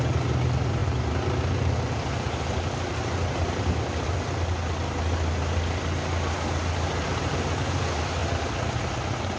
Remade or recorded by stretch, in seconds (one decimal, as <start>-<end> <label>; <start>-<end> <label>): 0.0-9.4 recorded